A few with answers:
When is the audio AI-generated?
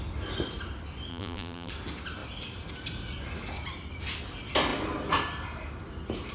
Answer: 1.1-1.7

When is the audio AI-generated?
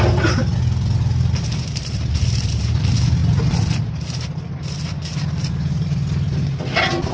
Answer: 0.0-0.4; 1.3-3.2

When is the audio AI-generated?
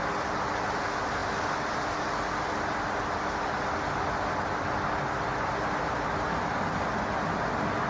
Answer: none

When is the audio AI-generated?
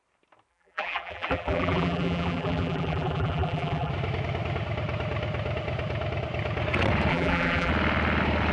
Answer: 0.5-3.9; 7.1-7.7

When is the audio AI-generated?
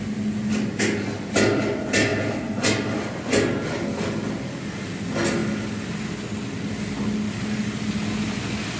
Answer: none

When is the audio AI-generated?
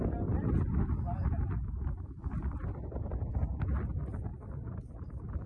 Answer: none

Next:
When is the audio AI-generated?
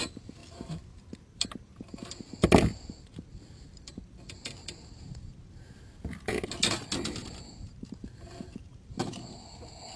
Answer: 0.4-1.9; 4.6-6.5; 7.2-9.0